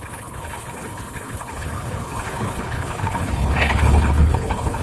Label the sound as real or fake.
fake